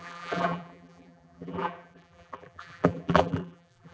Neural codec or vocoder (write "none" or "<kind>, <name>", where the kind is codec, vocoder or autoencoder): vocoder, BigVGAN v2